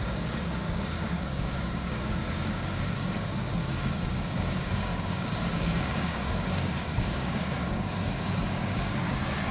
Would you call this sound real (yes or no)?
no